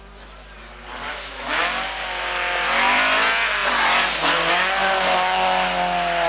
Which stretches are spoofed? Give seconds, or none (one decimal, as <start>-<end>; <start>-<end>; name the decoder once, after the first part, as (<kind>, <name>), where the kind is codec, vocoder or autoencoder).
1.1-1.6 (autoencoder, DAC-VAE)